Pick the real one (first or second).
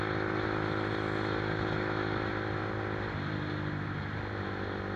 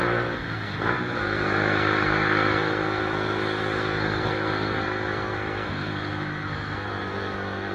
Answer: first